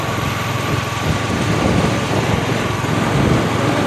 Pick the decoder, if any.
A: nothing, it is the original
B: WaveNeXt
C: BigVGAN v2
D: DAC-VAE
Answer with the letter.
A